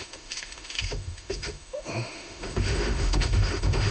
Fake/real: fake